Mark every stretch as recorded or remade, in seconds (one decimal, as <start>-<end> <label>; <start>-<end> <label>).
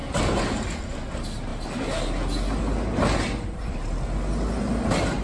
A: 0.0-5.2 recorded